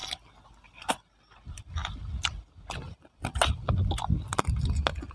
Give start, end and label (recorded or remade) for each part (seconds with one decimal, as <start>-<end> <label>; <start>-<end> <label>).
0.0-1.8 remade; 1.8-5.1 recorded